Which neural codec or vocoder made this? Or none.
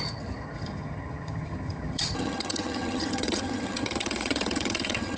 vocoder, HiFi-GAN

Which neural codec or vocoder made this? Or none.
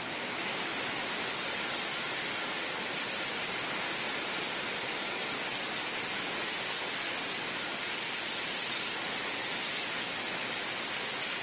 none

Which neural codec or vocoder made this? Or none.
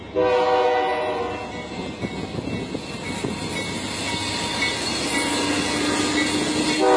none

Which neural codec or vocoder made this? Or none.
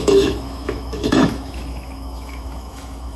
autoencoder, DAC-VAE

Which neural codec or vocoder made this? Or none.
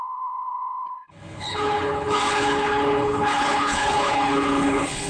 codec, HILCodec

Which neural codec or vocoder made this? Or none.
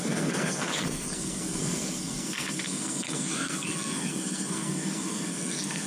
codec, SNAC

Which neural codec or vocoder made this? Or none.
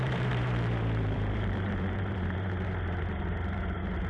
vocoder, BigVGAN v2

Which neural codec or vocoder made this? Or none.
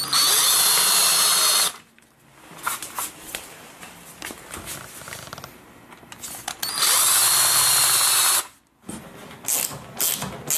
none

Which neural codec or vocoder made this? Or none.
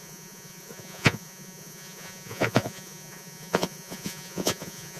vocoder, Vocos